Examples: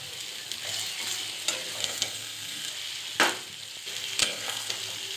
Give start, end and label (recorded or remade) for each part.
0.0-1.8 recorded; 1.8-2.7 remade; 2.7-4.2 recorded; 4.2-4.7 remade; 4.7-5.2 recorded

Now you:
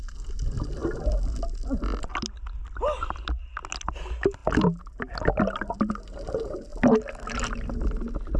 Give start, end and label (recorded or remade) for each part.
0.0-8.4 recorded

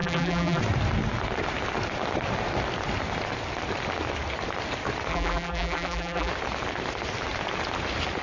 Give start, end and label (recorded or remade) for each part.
0.0-0.6 remade; 0.6-5.1 recorded; 5.1-6.3 remade; 6.3-8.2 recorded

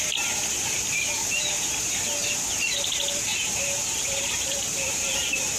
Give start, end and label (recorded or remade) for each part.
0.0-3.3 recorded; 3.3-5.6 remade